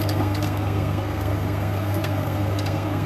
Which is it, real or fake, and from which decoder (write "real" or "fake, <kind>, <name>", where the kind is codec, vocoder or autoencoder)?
fake, codec, SNAC